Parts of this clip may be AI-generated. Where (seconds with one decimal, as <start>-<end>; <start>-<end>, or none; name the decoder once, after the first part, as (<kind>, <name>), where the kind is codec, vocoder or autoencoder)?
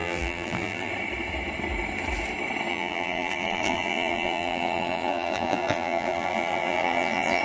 0.0-0.9 (vocoder, BigVGAN v2); 2.7-7.4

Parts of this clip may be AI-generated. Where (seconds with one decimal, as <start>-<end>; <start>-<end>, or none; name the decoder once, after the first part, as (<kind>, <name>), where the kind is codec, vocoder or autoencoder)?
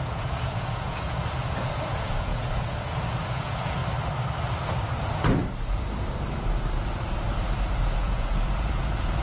0.0-3.8 (vocoder, Vocos); 7.8-9.2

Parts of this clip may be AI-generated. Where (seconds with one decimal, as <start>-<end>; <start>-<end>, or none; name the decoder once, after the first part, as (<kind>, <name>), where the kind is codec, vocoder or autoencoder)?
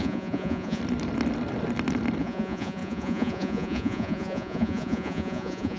0.0-0.8 (vocoder, Vocos); 2.2-5.8